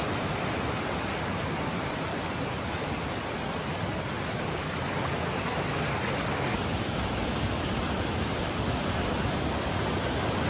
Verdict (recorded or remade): recorded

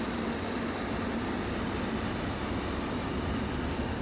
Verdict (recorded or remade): recorded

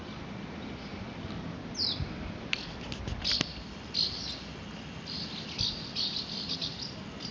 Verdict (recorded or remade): recorded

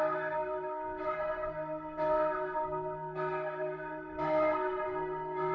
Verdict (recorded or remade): remade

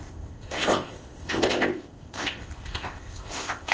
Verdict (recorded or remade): remade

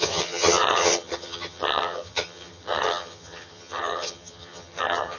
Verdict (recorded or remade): remade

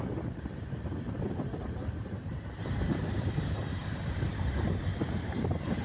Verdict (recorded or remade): remade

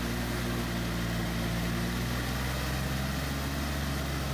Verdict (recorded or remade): recorded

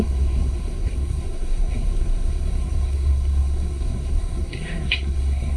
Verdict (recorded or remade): remade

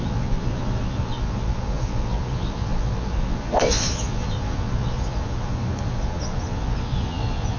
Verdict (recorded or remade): remade